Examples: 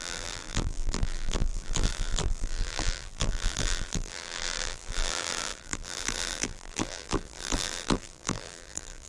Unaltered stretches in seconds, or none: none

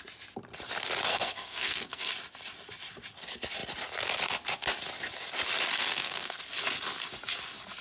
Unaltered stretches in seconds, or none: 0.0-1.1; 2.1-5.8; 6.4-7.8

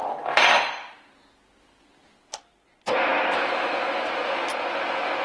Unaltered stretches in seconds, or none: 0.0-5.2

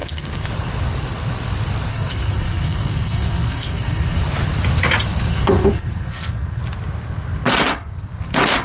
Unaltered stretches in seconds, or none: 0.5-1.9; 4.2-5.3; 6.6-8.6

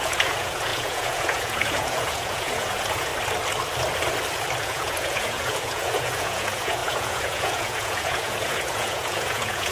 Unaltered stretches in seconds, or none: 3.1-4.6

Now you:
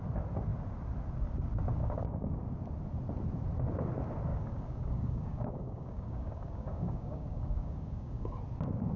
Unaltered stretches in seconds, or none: 0.0-1.8; 2.4-4.3; 8.4-9.0

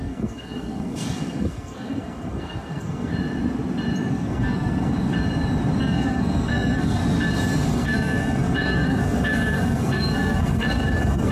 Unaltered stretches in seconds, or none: 3.1-4.1; 4.9-5.8; 7.0-7.7

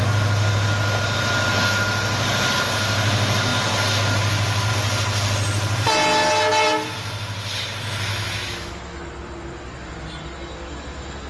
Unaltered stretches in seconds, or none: 0.0-8.1; 9.0-11.3